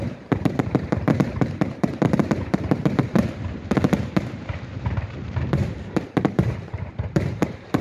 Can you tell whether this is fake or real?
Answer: fake